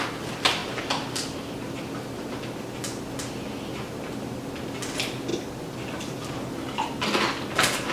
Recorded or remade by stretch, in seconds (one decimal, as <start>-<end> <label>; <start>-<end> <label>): 0.0-7.9 recorded